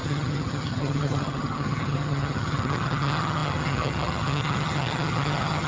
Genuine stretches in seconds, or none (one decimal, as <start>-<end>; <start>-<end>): none